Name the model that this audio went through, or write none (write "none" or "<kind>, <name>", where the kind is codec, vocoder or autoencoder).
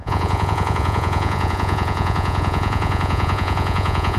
vocoder, Vocos